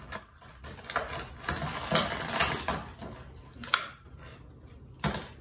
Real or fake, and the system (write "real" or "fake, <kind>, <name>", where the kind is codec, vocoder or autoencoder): real